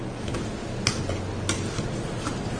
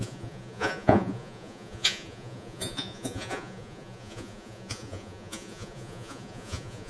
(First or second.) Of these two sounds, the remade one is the second